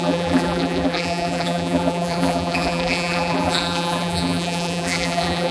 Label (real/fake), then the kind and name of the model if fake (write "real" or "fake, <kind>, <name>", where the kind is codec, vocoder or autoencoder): fake, vocoder, BigVGAN v2